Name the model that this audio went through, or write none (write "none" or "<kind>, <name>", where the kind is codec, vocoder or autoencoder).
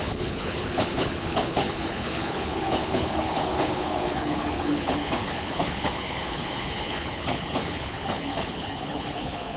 codec, HILCodec